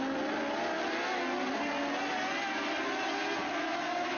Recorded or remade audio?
recorded